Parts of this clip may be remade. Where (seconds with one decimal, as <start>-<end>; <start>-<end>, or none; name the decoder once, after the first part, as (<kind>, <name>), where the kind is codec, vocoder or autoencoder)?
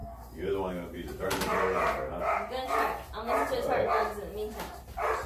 0.7-1.5 (vocoder, BigVGAN v2); 4.7-5.3